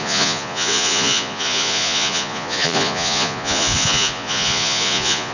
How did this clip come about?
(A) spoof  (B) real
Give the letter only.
A